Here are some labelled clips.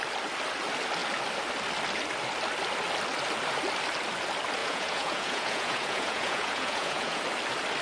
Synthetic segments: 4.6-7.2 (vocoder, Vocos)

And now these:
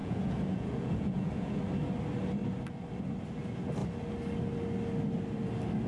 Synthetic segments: 0.0-1.6 (vocoder, Vocos)

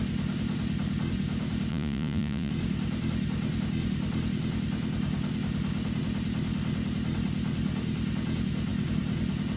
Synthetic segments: 1.7-2.5 (vocoder, Vocos)

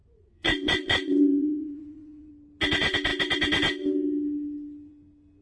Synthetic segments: 0.0-2.3 (vocoder, Vocos)